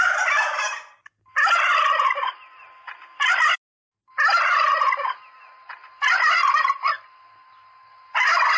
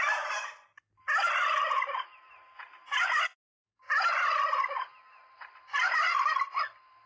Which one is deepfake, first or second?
second